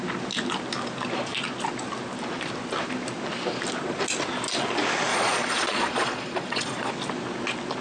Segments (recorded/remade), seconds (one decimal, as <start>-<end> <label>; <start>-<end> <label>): 0.0-5.1 recorded; 5.1-6.9 remade; 6.9-7.8 recorded